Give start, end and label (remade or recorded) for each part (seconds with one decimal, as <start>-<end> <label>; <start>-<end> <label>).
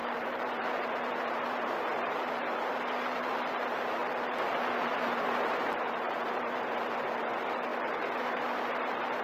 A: 0.0-4.0 remade; 4.0-4.8 recorded; 4.8-9.2 remade